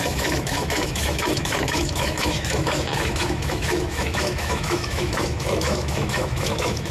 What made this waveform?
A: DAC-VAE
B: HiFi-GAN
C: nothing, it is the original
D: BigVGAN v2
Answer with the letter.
A